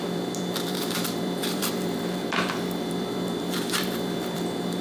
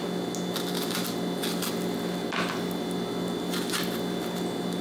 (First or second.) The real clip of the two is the second